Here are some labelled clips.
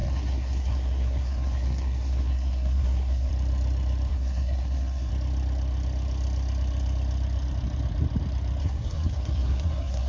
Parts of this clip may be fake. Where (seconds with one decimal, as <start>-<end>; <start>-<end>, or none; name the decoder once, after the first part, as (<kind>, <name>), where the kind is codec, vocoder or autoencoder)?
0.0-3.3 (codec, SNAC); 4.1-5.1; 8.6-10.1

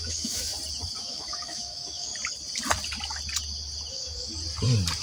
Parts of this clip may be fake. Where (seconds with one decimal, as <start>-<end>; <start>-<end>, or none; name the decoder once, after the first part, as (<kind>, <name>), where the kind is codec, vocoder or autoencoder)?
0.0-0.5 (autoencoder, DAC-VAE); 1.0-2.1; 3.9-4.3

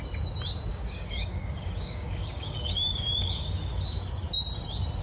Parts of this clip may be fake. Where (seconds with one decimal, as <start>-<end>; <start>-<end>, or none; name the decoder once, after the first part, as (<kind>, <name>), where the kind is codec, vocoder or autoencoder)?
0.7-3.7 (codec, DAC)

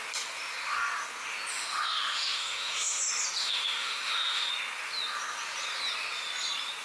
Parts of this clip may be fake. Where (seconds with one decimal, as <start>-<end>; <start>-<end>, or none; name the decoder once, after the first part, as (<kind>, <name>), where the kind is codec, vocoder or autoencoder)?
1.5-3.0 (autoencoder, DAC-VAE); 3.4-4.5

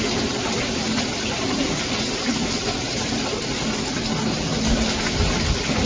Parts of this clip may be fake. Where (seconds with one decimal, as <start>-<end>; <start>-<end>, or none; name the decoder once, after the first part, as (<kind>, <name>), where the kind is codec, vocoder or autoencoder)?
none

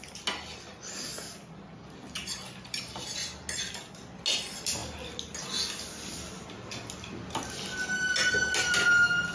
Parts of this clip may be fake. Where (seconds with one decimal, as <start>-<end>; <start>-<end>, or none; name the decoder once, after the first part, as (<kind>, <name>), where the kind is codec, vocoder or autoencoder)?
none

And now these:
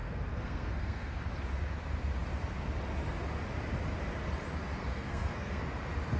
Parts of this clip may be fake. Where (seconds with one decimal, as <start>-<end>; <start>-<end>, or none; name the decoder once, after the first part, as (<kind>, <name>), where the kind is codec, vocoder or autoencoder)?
0.0-1.2 (codec, SNAC); 4.9-5.6

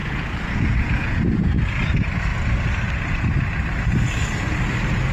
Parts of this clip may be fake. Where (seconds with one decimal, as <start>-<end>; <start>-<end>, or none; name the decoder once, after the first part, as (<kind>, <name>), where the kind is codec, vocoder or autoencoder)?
0.0-1.2 (vocoder, Vocos)